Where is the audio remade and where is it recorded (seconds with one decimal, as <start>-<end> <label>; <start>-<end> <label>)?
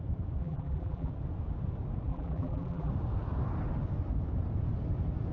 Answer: 0.0-0.4 recorded; 0.4-1.1 remade; 1.1-2.1 recorded; 2.1-2.9 remade; 2.9-5.3 recorded